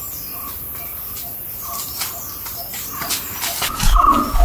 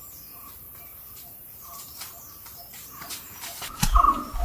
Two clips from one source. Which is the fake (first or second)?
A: second